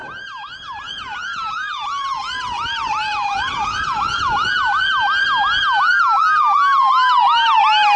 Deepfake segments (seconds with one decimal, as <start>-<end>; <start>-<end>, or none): 0.0-4.8